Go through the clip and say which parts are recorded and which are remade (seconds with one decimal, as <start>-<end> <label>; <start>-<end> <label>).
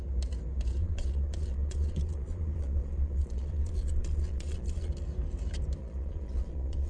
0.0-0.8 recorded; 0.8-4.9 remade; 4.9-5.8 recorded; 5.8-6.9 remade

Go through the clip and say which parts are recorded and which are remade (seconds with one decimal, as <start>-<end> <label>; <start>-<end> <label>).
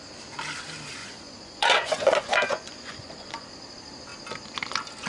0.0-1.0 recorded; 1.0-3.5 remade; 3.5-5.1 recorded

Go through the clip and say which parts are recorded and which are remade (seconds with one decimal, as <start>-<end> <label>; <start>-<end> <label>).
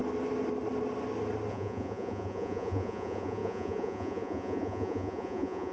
0.0-1.5 recorded; 1.5-5.7 remade